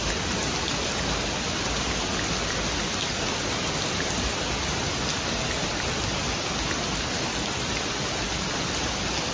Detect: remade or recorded recorded